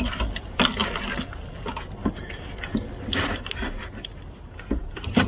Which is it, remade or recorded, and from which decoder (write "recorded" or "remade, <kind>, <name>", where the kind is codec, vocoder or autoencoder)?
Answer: recorded